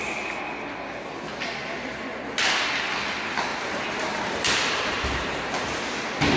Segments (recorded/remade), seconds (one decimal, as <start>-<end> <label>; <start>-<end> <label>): 0.0-3.5 recorded; 3.5-5.8 remade; 5.8-6.4 recorded